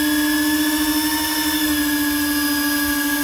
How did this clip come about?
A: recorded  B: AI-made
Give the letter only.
A